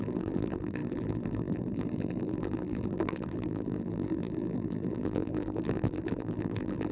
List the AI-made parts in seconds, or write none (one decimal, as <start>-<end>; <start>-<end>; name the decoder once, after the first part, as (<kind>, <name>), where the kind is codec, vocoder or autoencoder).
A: 0.0-6.9 (vocoder, BigVGAN v2)